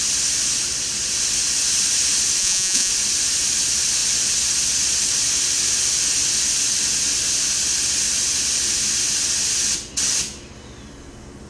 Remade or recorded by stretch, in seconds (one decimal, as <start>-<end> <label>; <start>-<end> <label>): 0.0-2.4 recorded; 2.4-2.9 remade; 2.9-11.5 recorded